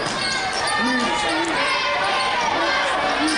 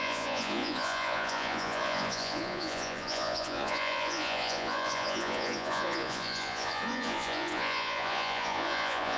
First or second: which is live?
first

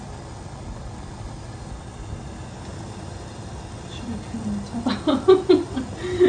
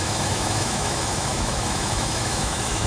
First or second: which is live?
first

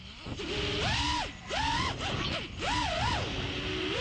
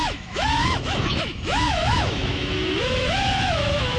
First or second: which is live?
first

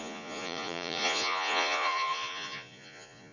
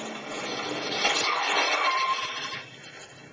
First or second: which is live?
second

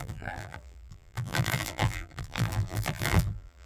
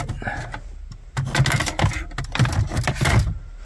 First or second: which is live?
second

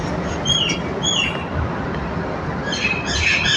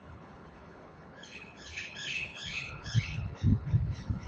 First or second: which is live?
first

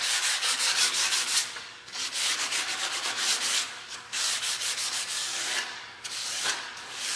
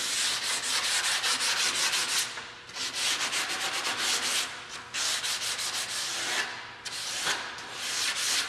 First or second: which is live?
second